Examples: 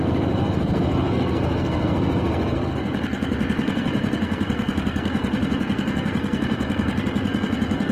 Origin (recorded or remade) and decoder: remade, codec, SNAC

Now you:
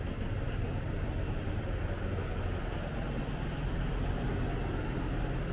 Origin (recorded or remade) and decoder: recorded